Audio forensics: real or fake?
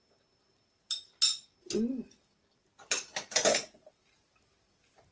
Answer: real